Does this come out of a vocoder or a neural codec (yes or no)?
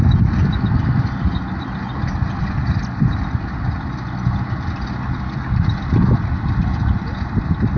no